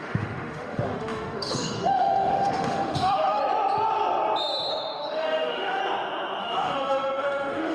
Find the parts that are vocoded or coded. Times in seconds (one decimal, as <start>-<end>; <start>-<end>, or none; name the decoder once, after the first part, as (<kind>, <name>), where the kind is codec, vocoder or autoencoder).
0.0-3.4 (autoencoder, DAC-VAE); 4.7-5.8; 6.4-7.7